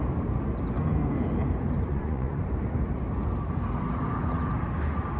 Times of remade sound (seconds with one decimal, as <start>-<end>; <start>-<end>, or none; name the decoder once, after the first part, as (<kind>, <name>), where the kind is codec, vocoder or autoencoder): 1.9-2.4 (vocoder, Vocos)